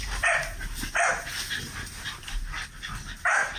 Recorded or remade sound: recorded